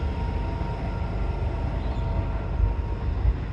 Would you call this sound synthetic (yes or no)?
no